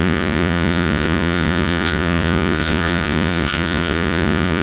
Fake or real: fake